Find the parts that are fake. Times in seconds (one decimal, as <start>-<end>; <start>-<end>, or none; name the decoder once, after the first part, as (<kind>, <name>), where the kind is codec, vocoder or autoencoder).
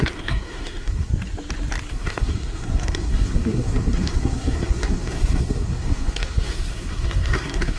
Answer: 0.0-1.1 (codec, SNAC); 1.9-7.8